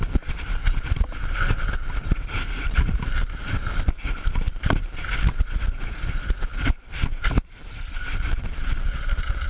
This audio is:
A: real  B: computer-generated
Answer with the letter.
A